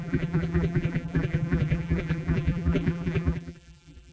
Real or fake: fake